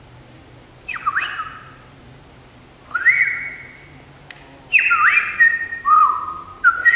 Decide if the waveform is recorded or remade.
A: recorded